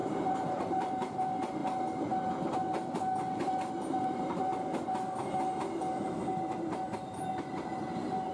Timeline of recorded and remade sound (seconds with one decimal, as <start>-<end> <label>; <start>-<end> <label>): 0.0-1.2 remade; 1.2-8.3 recorded